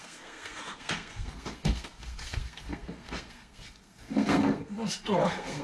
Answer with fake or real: fake